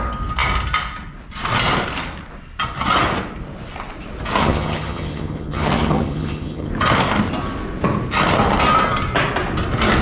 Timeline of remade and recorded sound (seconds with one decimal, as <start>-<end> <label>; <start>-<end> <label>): 0.0-4.4 recorded; 4.4-6.7 remade; 6.7-10.0 recorded